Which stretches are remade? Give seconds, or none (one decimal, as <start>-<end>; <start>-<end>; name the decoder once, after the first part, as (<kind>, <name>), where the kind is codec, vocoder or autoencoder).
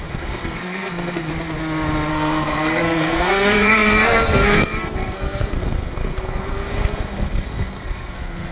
0.0-1.3 (codec, SNAC); 2.1-8.5